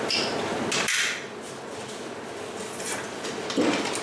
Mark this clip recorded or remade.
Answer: recorded